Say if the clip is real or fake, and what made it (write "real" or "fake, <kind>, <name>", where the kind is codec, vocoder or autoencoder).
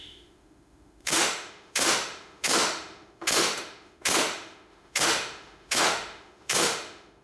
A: fake, autoencoder, DAC-VAE